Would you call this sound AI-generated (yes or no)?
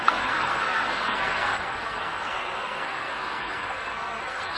yes